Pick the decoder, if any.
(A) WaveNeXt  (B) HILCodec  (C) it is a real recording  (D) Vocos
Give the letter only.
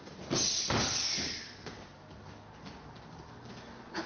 C